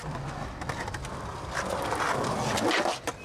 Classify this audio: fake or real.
real